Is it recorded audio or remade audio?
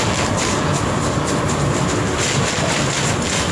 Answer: recorded